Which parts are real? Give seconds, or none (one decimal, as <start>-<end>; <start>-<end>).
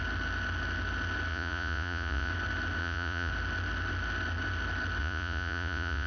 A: 0.0-1.3; 2.3-2.8; 3.3-5.0